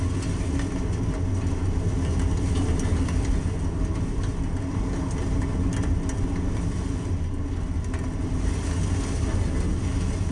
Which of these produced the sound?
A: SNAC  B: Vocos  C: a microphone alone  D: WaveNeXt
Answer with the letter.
C